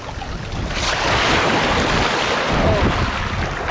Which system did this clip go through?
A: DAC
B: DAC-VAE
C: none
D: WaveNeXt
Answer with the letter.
C